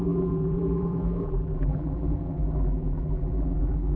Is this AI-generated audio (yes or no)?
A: yes